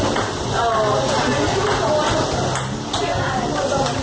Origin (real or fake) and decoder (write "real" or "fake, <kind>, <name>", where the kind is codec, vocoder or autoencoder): real